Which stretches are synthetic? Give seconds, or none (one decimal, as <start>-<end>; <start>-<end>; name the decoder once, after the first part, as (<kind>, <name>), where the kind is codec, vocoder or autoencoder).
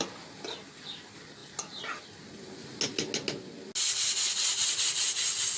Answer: none